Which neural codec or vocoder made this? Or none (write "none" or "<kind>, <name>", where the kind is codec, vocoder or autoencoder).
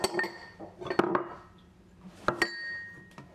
none